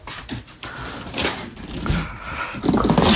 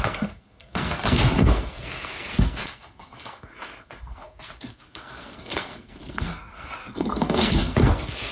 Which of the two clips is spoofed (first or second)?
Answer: second